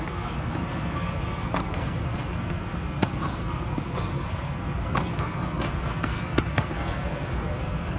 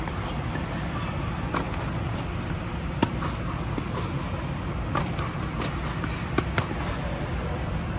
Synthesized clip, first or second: first